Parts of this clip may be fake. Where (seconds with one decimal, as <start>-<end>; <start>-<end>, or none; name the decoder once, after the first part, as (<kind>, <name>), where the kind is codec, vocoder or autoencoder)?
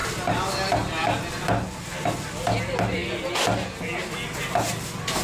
none